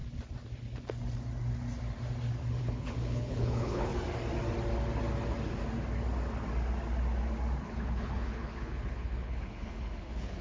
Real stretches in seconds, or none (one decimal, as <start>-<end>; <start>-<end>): 0.0-2.6; 3.9-7.6